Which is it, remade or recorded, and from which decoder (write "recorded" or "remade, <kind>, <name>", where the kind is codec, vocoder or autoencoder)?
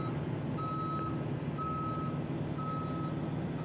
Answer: recorded